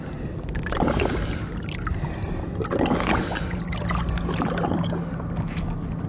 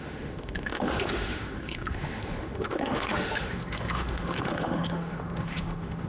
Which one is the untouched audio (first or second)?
first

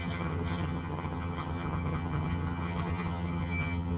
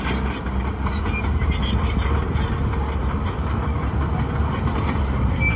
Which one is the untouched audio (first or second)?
second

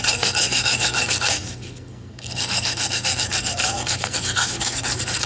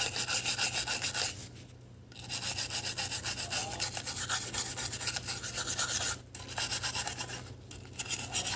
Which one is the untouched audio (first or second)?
second